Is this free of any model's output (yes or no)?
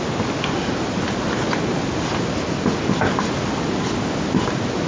yes